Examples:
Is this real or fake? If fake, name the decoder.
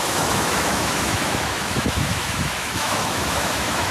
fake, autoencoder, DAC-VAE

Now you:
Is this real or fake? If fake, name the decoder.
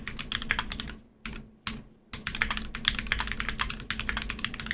real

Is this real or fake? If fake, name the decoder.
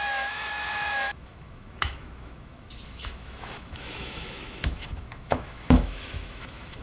fake, autoencoder, DAC-VAE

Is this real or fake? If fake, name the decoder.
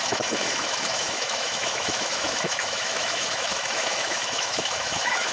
fake, autoencoder, DAC-VAE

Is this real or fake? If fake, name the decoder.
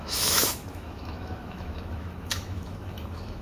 fake, autoencoder, DAC-VAE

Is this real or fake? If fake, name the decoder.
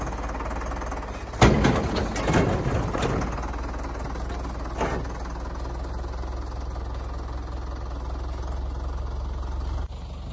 real